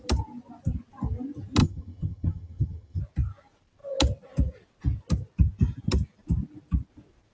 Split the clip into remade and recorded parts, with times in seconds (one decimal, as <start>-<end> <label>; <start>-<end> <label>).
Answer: 0.0-1.6 recorded; 1.6-3.0 remade; 3.0-7.3 recorded